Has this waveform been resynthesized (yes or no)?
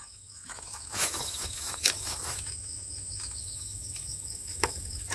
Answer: yes